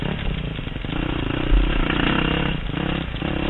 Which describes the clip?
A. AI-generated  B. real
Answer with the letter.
B